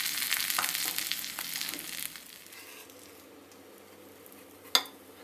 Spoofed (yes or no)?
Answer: no